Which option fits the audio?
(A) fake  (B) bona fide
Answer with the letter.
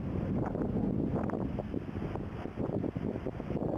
B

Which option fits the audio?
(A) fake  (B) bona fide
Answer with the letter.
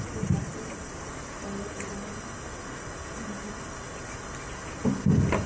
B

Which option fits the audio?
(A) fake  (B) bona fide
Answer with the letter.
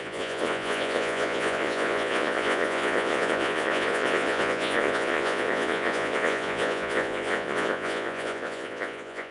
A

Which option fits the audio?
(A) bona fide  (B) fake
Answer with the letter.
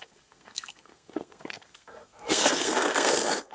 B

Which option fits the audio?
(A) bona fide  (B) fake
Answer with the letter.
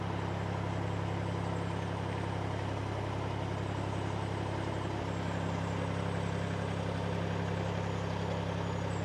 A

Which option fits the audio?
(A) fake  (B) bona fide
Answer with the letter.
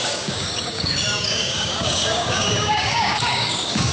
A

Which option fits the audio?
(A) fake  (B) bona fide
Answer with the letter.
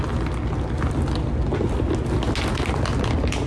B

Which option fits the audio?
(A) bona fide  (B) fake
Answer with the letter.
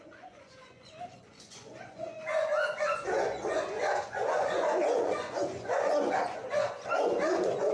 B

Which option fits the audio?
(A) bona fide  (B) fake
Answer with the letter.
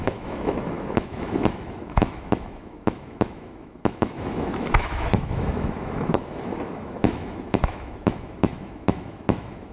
B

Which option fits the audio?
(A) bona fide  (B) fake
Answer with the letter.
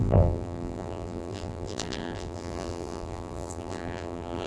B